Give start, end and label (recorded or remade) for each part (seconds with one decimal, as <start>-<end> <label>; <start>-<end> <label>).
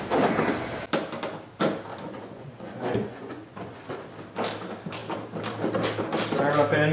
0.0-1.9 recorded; 1.9-3.8 remade; 3.8-6.9 recorded